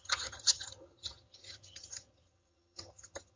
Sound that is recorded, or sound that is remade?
remade